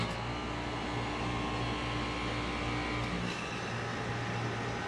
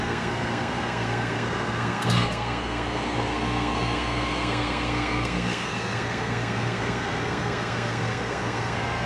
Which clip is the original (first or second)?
first